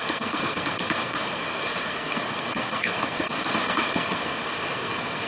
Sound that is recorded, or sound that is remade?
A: remade